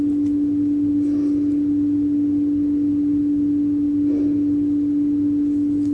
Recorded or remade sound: recorded